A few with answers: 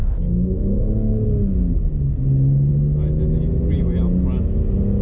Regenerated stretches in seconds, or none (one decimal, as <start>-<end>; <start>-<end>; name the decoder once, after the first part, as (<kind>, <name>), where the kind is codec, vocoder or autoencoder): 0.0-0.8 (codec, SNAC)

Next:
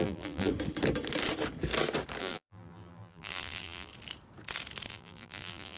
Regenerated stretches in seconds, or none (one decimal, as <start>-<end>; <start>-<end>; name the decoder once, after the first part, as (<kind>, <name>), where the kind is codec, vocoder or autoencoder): 0.0-0.5 (vocoder, BigVGAN v2); 2.2-3.9; 4.9-5.8

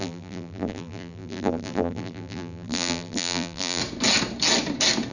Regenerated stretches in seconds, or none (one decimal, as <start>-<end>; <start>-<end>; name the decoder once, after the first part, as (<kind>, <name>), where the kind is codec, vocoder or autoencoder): 0.0-3.8 (vocoder, BigVGAN v2)

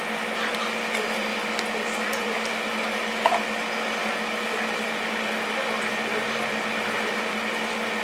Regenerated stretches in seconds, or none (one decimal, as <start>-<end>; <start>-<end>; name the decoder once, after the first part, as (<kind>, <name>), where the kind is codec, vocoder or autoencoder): none

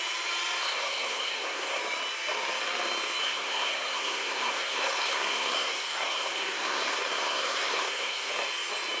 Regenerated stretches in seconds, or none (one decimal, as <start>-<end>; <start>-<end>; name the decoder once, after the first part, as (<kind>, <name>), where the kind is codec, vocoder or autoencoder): 0.6-1.8 (codec, SNAC); 3.2-8.3

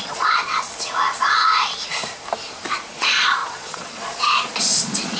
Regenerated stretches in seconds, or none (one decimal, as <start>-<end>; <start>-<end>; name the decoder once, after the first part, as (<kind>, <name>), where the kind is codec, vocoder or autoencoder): 0.0-0.5 (vocoder, Vocos); 2.9-5.2

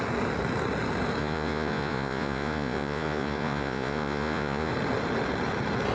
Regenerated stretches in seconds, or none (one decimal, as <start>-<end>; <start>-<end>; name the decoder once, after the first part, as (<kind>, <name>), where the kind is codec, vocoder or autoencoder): 1.2-4.7 (vocoder, Vocos)

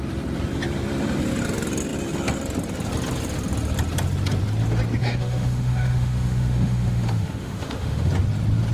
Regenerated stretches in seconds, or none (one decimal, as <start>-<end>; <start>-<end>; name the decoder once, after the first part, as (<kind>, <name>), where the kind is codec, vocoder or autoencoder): 5.0-8.1 (autoencoder, DAC-VAE)